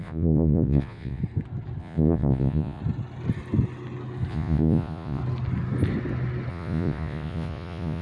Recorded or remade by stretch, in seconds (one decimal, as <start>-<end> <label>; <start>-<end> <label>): 0.0-1.2 remade; 1.2-1.8 recorded; 1.8-2.8 remade; 2.8-4.3 recorded; 4.3-5.2 remade; 5.2-6.5 recorded; 6.5-8.0 remade